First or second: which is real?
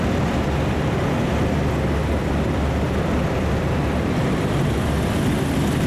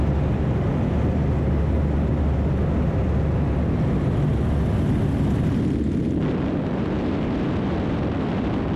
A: second